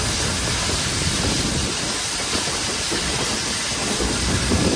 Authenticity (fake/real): real